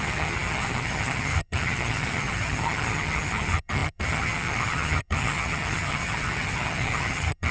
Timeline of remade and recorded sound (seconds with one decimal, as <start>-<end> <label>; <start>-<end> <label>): 0.0-7.5 remade